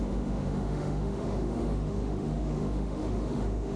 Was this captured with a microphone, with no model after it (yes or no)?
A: no